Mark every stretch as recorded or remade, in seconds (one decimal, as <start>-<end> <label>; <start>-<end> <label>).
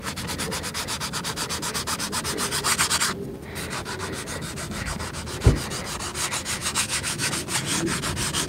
0.0-6.6 recorded; 6.6-7.3 remade; 7.3-8.5 recorded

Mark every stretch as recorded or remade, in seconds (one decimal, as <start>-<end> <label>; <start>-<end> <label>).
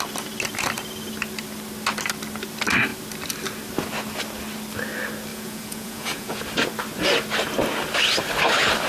0.0-5.3 recorded; 5.3-6.4 remade; 6.4-8.9 recorded